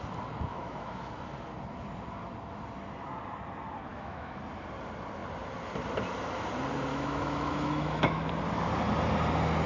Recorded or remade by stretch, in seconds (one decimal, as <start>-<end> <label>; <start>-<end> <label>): 0.0-0.5 recorded; 0.5-1.1 remade; 1.1-3.9 recorded; 3.9-4.4 remade; 4.4-6.9 recorded; 6.9-8.3 remade; 8.3-9.7 recorded